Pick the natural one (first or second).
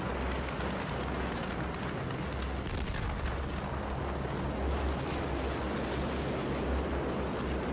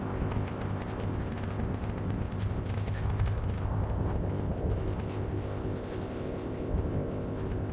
first